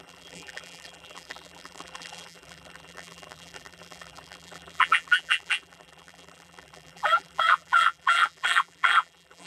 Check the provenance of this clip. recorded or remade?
remade